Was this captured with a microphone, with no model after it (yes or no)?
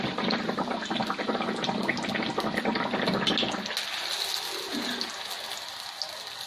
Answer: yes